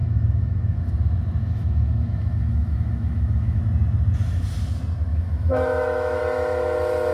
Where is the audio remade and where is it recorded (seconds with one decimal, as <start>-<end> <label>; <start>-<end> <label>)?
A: 0.0-0.8 remade; 0.8-1.4 recorded; 1.4-3.6 remade; 3.6-5.1 recorded; 5.1-6.2 remade; 6.2-7.1 recorded